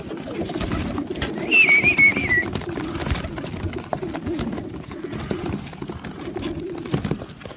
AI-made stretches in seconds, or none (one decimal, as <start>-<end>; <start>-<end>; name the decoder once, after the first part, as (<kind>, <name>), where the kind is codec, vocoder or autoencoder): none